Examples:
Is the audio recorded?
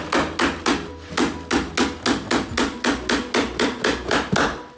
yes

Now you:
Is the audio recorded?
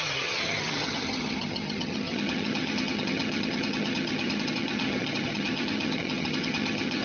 no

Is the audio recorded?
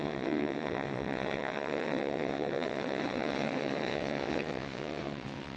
no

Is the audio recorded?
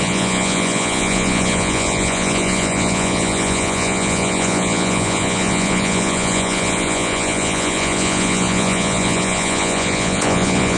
no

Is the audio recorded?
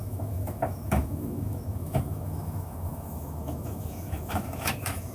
no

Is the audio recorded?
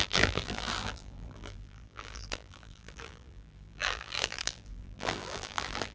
no